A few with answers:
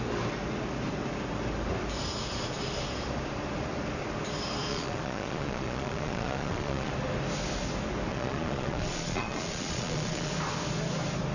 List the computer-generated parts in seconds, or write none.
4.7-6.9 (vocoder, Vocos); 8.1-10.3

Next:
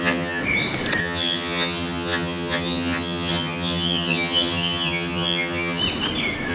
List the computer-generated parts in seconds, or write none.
0.0-0.4 (vocoder, HiFi-GAN); 1.0-5.8

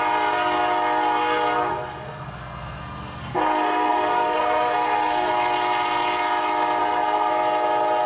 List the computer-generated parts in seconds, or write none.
1.7-5.3 (codec, SNAC); 6.8-7.3

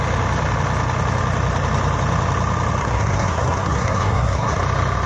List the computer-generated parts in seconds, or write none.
2.8-4.6 (codec, SNAC)

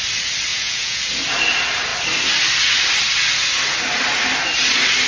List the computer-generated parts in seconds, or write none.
0.5-1.1 (vocoder, Vocos)

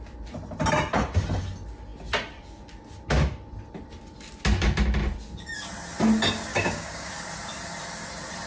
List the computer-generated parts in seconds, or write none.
6.5-7.1 (codec, DAC)

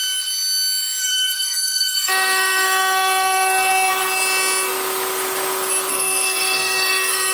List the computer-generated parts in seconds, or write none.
1.0-3.7 (codec, SNAC); 5.9-7.3

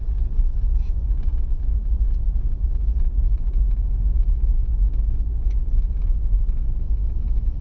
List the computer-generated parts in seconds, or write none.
none